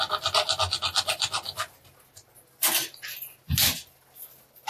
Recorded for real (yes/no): yes